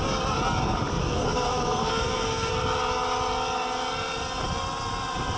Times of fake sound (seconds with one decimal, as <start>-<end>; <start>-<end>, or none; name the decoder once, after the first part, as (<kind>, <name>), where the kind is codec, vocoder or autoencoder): 1.0-2.5 (codec, SNAC)